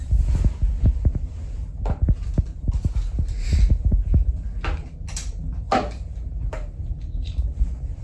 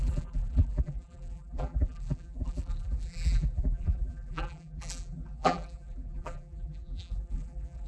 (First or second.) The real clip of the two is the first